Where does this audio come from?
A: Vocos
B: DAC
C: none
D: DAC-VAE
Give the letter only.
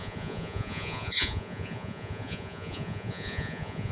A